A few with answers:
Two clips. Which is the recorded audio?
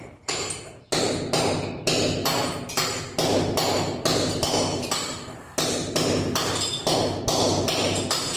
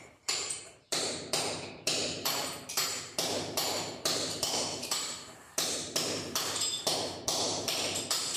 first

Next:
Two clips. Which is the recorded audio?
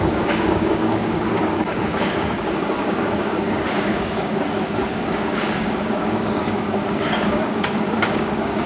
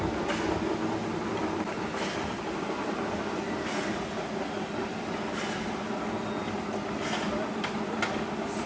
second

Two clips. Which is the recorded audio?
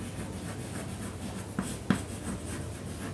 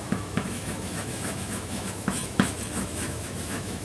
first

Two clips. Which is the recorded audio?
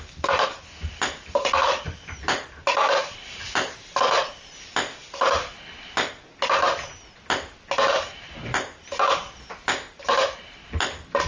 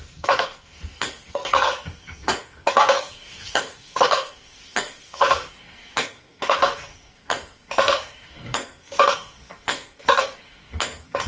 first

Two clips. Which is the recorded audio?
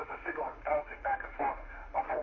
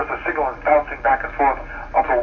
second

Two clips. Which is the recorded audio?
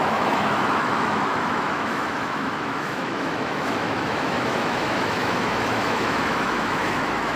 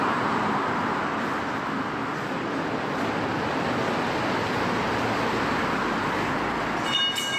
second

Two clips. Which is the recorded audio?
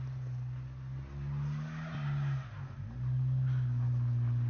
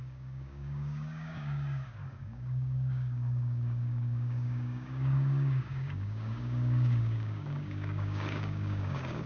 first